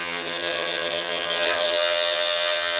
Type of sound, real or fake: fake